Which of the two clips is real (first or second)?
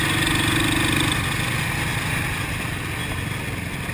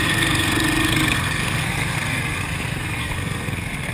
first